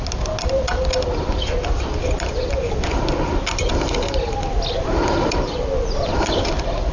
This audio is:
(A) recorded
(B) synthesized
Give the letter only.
A